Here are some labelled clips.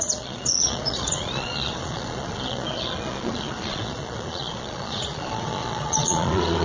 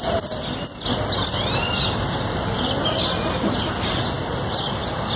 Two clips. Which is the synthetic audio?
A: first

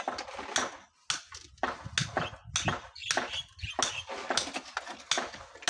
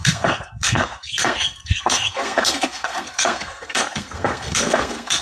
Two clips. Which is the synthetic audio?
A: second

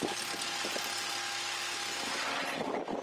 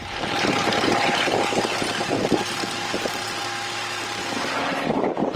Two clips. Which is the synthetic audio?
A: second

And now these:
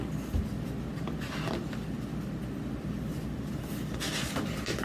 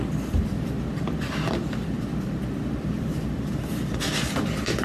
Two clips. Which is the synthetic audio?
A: second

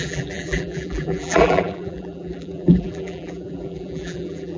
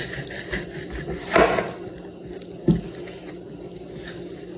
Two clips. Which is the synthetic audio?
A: first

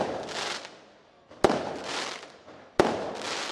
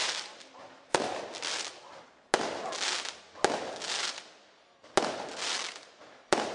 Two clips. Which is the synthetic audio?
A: first